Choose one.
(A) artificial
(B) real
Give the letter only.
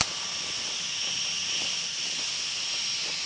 B